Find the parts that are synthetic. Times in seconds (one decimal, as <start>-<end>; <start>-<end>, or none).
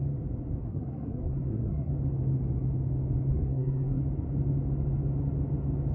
0.6-1.9; 3.3-4.0